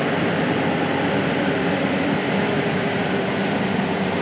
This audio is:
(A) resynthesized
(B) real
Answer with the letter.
A